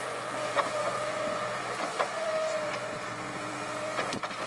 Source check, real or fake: fake